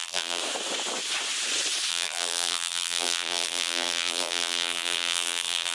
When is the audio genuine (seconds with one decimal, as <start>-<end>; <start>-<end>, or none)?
0.4-1.9